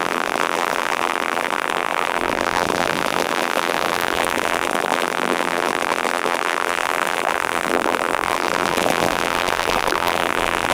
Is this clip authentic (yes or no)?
no